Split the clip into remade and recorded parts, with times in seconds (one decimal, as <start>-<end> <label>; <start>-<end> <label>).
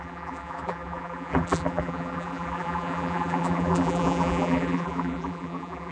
0.0-5.9 remade